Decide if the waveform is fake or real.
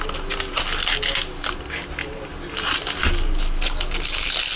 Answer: real